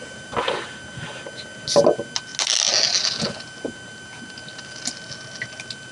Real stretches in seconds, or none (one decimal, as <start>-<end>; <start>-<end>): 0.0-5.9